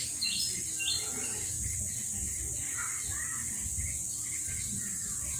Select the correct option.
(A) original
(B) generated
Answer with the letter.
A